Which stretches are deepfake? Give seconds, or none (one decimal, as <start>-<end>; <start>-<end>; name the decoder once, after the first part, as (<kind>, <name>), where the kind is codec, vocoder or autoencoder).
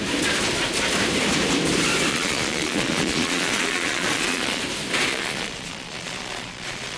2.1-4.6 (vocoder, Vocos); 5.1-7.0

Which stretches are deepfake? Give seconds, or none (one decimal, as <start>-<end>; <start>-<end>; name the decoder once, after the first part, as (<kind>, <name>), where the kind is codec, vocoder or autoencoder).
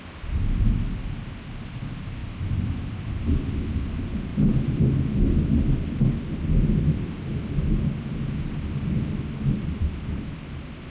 none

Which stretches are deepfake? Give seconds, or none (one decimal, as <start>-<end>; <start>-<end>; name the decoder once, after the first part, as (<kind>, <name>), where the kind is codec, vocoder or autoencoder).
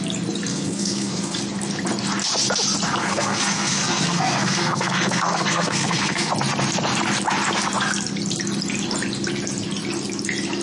0.5-1.4 (codec, SNAC); 3.0-6.3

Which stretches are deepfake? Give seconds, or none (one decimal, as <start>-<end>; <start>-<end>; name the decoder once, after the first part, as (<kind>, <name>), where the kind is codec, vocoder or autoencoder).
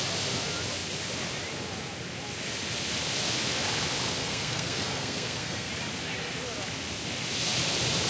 4.2-5.7 (codec, SNAC)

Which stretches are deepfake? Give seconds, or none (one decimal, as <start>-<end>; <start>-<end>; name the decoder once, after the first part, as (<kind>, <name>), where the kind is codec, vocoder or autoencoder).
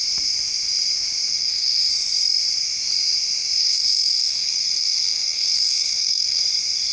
1.3-1.9 (codec, SNAC); 3.6-6.4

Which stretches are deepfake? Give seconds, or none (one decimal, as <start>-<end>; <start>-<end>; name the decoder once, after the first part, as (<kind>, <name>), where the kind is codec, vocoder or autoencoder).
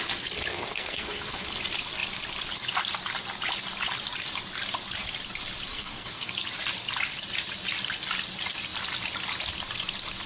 0.5-1.5 (codec, SNAC); 5.7-6.3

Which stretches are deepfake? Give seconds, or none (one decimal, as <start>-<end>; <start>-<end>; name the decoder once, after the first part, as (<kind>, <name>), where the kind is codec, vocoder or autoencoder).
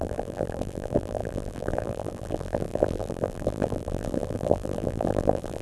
0.0-5.6 (vocoder, BigVGAN v2)